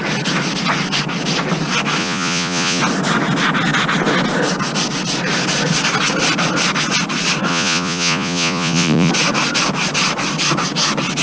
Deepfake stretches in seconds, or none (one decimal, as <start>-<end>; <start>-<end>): 2.0-2.8; 7.5-9.1